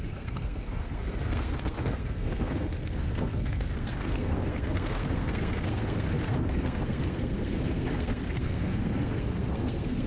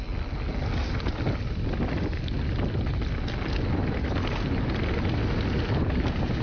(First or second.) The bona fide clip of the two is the second